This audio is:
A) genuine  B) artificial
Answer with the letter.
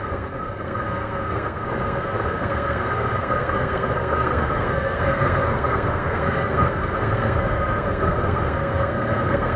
B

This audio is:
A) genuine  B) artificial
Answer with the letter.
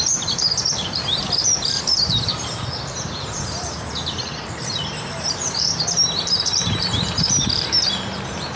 B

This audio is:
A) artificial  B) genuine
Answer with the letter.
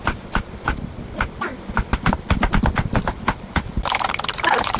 B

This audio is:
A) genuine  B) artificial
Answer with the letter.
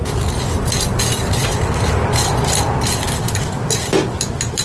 A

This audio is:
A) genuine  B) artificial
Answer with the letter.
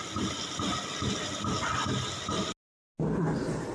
A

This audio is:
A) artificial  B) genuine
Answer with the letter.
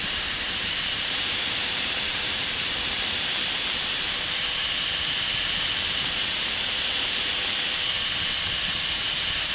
A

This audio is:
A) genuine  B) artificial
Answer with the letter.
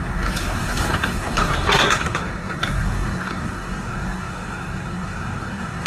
B